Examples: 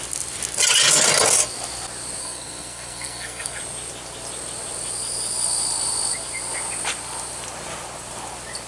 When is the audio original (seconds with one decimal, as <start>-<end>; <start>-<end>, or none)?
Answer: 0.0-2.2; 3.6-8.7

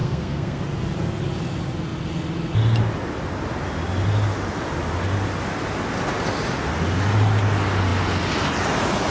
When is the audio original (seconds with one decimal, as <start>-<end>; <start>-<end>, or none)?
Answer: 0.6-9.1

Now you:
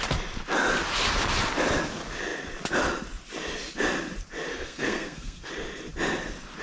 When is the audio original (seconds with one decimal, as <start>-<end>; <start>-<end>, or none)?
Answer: 0.0-4.5; 5.5-6.6